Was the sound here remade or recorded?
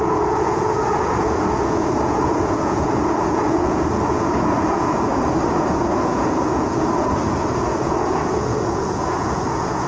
remade